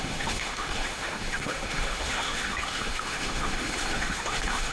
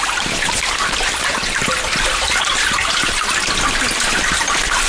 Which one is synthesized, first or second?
first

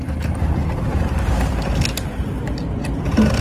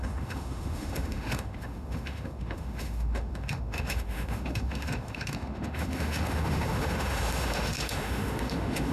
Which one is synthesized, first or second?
second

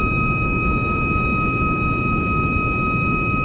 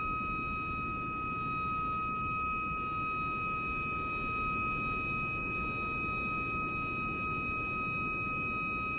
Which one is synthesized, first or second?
first